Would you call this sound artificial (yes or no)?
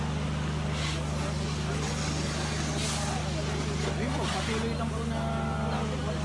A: no